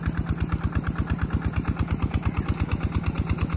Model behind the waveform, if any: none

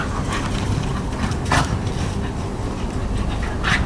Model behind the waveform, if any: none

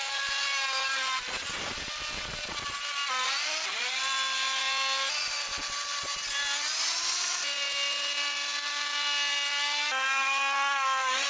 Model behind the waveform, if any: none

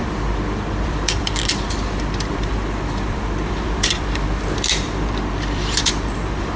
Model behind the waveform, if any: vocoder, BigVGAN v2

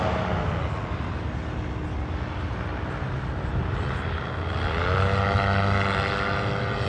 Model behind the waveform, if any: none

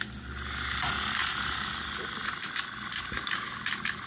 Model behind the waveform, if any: none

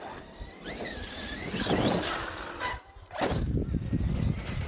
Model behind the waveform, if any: none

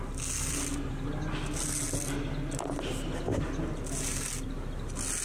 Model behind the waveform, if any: none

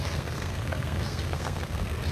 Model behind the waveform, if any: codec, SNAC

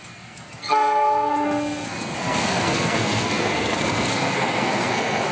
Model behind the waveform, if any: codec, SNAC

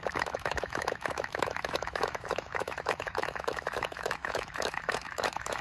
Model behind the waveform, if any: autoencoder, DAC-VAE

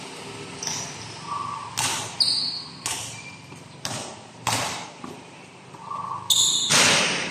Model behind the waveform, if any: none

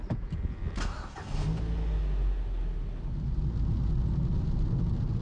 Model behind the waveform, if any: none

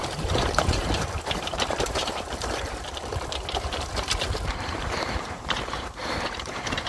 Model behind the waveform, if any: vocoder, BigVGAN v2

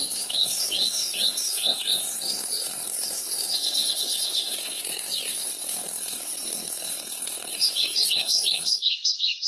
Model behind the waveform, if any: codec, SNAC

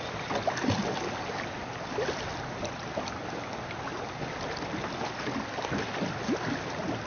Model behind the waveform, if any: none